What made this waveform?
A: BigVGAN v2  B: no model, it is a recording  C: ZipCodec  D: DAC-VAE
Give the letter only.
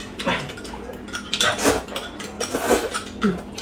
B